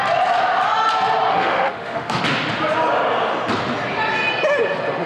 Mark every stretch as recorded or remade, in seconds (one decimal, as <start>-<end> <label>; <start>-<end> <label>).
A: 0.0-1.3 recorded; 1.3-2.2 remade; 2.2-5.1 recorded